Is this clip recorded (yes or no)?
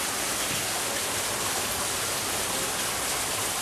yes